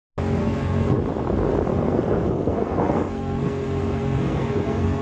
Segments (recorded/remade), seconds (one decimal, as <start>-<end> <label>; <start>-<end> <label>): 0.0-0.4 recorded; 0.4-1.0 remade; 1.0-1.7 recorded; 1.7-5.0 remade